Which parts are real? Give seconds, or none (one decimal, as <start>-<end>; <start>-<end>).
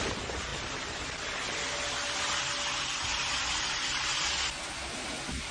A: 0.0-5.5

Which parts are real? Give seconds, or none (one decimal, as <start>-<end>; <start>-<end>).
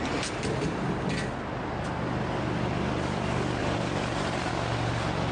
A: 0.0-3.6; 4.5-5.3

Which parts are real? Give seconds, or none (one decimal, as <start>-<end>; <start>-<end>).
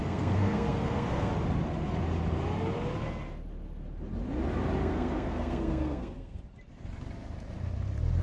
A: 1.3-4.8; 6.4-8.2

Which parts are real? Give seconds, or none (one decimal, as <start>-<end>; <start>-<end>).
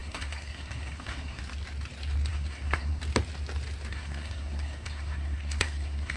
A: 1.4-2.3; 3.0-3.9